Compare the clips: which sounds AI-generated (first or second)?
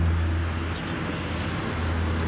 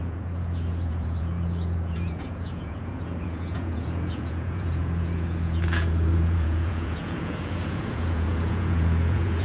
second